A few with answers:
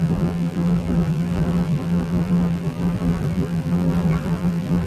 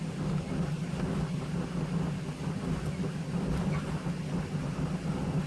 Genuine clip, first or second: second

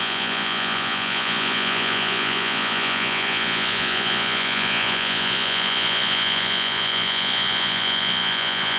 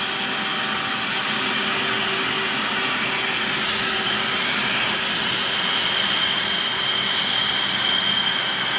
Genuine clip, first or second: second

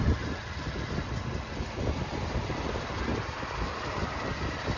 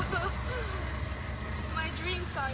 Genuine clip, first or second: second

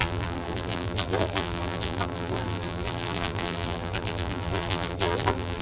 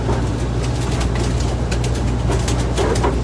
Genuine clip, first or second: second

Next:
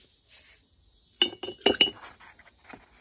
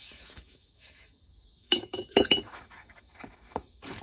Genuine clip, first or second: first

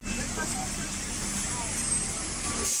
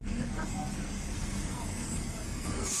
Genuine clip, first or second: first